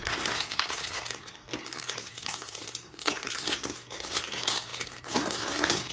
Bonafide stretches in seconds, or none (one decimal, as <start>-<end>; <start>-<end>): none